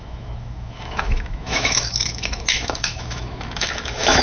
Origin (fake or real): fake